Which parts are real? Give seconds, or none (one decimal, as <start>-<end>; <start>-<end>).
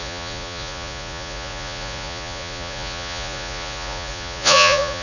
none